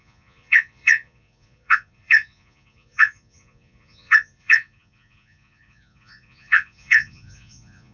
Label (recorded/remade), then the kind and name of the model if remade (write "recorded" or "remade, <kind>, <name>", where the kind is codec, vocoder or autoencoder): remade, vocoder, Vocos